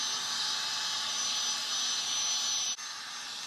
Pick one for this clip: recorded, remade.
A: recorded